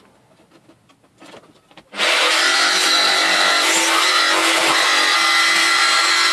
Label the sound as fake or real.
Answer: real